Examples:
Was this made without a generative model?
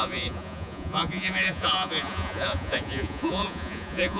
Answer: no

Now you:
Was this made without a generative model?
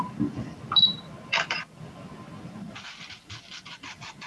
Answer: no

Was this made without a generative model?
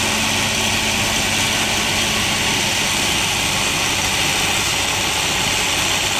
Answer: yes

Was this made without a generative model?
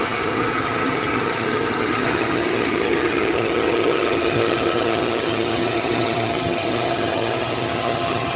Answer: no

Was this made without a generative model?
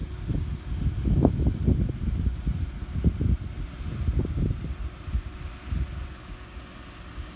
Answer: yes